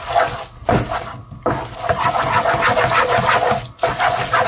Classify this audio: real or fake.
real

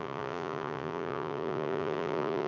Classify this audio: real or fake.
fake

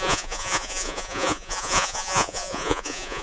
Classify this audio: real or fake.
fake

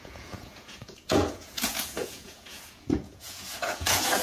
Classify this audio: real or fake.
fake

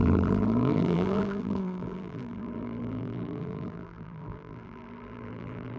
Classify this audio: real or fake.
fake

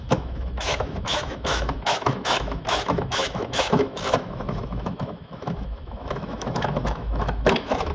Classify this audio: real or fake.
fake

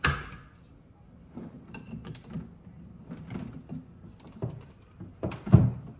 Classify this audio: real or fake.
real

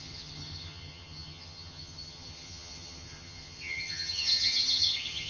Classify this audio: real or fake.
fake